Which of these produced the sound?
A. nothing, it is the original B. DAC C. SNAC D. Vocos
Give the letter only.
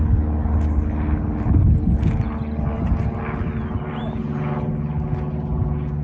A